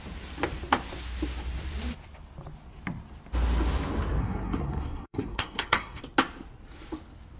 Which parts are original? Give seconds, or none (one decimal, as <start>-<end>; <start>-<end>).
0.0-4.2; 6.0-7.4